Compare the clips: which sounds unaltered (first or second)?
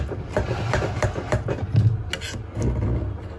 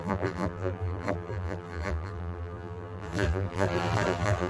first